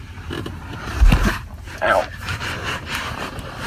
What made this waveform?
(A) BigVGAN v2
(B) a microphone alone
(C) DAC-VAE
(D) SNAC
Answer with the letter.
A